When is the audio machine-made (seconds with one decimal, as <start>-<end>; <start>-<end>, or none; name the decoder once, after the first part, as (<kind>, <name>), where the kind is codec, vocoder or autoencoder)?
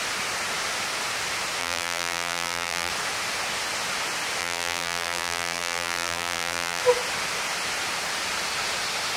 1.6-2.9 (vocoder, BigVGAN v2); 4.4-6.8